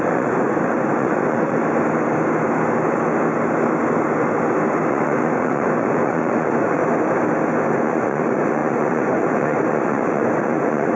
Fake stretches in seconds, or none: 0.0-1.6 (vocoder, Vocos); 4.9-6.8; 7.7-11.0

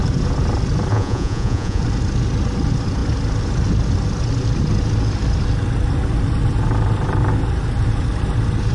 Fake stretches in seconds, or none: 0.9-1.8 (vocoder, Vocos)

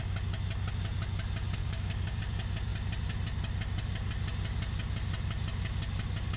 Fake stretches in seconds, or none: 1.6-2.2 (codec, DAC)

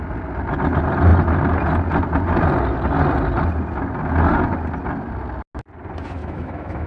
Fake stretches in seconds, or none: 6.2-6.9 (autoencoder, DAC-VAE)